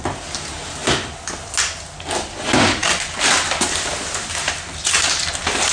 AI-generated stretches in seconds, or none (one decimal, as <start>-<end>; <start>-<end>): none